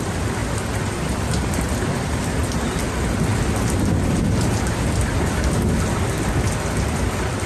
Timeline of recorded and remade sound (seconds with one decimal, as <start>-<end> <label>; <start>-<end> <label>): 0.0-2.4 remade; 2.4-2.9 recorded; 2.9-3.3 remade; 3.3-6.5 recorded; 6.5-7.5 remade